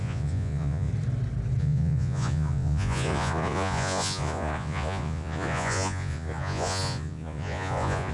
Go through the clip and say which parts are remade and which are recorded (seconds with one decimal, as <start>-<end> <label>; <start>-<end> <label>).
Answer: 0.0-0.9 remade; 0.9-1.6 recorded; 1.6-8.1 remade